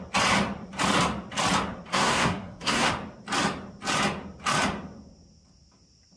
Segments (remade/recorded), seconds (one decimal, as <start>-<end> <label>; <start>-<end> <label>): 0.0-1.9 recorded; 1.9-2.9 remade; 2.9-6.2 recorded